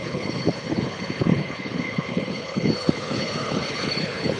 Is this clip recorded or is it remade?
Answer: remade